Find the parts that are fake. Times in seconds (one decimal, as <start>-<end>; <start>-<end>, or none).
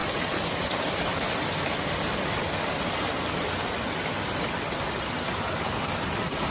0.0-0.7